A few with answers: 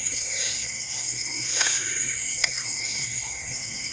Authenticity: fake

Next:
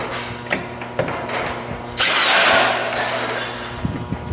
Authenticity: real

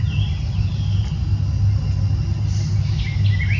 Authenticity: real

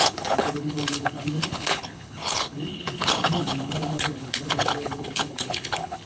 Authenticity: fake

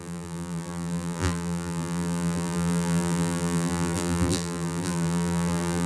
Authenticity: fake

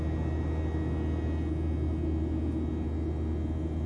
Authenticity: real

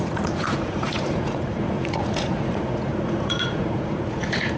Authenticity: fake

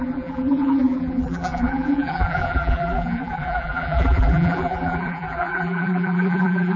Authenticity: fake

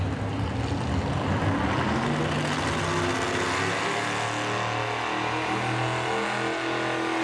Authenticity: real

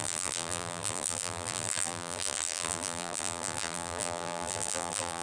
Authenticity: fake